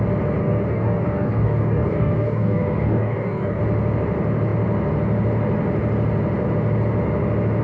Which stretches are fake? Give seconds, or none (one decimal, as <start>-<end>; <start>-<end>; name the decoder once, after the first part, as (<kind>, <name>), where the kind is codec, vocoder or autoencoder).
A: 0.4-3.6 (codec, DAC)